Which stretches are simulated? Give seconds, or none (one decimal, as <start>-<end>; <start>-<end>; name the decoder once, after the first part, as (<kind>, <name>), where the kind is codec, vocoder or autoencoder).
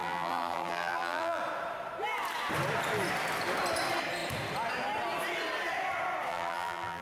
0.0-1.4 (vocoder, BigVGAN v2); 6.3-7.0